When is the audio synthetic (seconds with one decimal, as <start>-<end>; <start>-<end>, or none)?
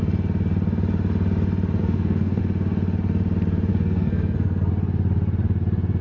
1.8-2.4; 3.7-4.7